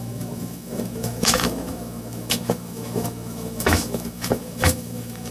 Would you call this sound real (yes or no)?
no